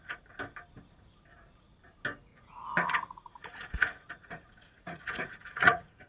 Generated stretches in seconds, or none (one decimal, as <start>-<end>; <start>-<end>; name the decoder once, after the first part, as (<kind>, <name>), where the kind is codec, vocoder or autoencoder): 2.3-6.1 (vocoder, Vocos)